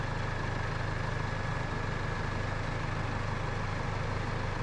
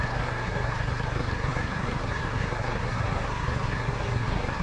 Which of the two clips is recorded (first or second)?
first